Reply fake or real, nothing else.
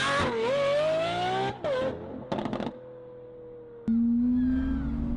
real